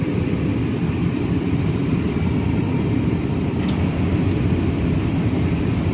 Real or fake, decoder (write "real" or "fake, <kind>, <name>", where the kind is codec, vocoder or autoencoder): real